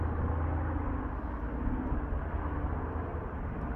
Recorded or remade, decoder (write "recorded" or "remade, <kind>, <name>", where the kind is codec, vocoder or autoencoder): recorded